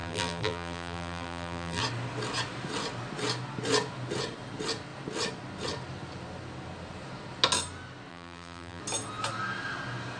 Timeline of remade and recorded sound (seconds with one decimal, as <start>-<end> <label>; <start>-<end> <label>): 0.0-1.8 remade; 1.8-8.1 recorded; 8.1-8.8 remade; 8.8-10.2 recorded